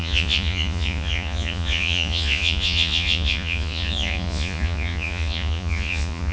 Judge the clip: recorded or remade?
remade